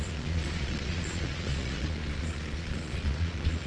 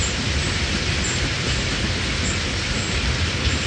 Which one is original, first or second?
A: second